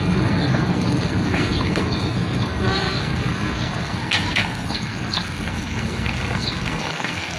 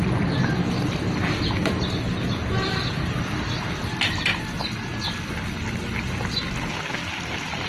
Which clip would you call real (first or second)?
second